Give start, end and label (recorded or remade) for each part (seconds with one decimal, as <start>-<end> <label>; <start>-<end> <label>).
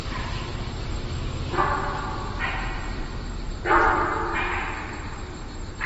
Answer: 0.0-5.9 recorded